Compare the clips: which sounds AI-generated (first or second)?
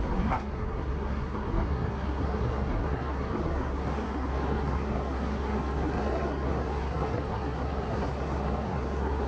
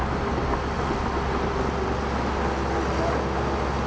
first